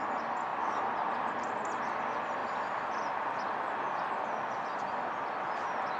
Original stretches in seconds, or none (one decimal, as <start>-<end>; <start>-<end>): 0.0-0.5; 1.4-2.4; 5.3-6.0